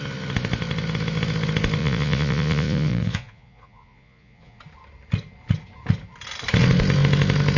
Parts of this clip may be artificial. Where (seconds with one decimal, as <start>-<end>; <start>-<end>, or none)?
1.8-4.6